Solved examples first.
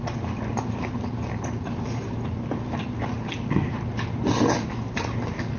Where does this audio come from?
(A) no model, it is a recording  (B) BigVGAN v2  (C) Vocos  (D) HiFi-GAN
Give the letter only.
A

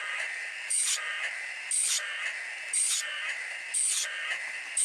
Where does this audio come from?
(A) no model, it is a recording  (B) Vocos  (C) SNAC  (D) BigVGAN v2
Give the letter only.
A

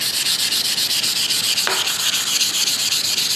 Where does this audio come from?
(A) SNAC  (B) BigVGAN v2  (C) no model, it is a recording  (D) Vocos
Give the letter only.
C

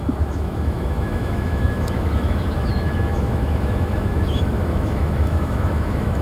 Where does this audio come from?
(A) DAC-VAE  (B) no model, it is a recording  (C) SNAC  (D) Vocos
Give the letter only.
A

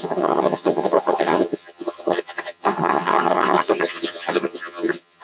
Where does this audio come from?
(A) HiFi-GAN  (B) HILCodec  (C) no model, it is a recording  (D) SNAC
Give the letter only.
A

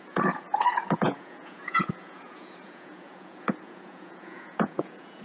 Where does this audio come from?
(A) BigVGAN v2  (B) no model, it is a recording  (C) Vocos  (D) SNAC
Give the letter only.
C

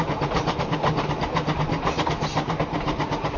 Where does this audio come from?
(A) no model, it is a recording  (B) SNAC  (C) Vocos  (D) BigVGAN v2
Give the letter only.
A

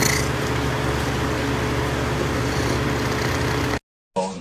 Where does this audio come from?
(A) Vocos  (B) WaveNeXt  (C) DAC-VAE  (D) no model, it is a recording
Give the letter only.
D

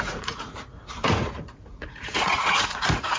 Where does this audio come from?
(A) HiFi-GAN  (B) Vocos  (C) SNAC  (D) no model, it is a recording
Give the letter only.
B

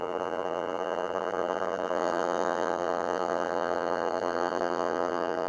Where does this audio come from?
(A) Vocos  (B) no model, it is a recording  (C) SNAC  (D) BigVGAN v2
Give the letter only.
D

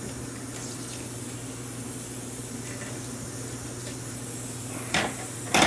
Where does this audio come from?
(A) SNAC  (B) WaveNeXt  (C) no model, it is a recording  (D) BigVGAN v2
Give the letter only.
C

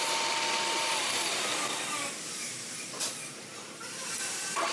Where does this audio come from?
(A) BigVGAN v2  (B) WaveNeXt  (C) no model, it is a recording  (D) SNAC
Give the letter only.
A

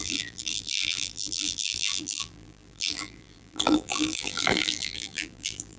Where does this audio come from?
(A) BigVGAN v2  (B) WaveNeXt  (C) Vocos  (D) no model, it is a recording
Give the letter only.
A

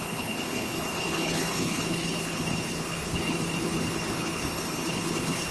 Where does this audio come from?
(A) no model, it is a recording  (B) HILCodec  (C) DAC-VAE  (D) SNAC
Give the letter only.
B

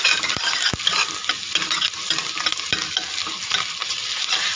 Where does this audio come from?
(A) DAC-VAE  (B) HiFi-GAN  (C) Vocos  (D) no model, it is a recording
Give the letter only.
D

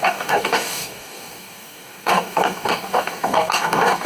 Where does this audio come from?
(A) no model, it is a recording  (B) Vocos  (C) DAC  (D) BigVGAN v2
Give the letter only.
C